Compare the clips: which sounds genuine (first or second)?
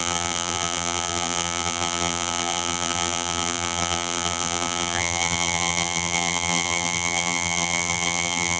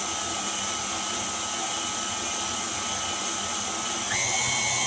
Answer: second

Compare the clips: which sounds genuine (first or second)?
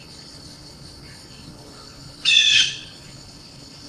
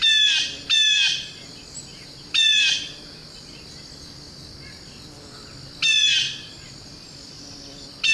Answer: second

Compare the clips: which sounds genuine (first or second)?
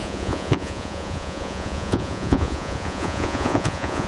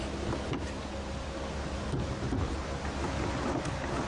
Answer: second